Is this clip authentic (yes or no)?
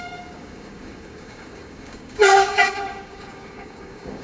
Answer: no